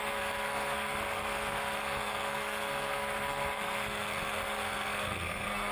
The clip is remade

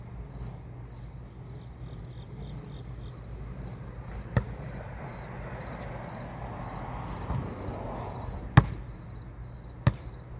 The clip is recorded